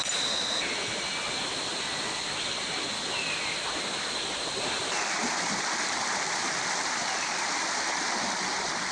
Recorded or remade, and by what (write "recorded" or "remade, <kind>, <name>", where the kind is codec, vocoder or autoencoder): recorded